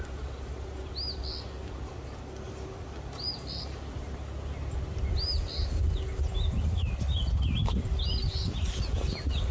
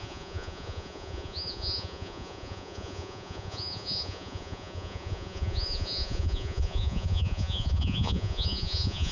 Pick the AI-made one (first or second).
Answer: second